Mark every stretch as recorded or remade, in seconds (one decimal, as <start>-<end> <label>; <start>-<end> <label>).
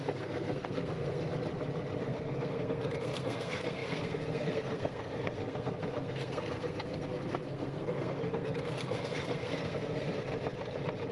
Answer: 0.0-1.3 remade; 1.3-2.0 recorded; 2.0-10.2 remade; 10.2-11.1 recorded